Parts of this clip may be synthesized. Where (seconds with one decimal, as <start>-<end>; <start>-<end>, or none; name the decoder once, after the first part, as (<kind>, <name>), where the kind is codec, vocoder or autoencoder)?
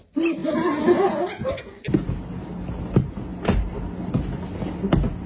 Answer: none